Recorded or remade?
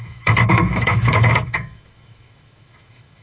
remade